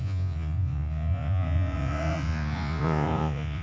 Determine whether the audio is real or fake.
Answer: fake